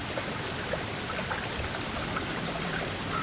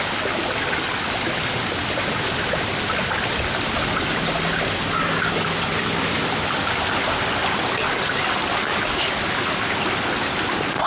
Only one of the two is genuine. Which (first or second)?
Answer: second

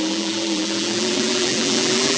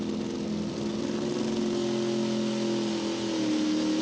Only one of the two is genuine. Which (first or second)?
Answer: second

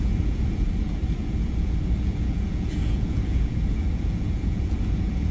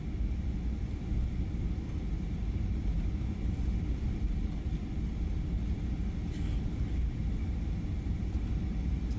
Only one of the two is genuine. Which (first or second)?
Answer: second